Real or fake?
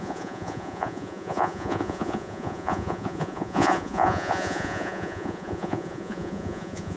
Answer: fake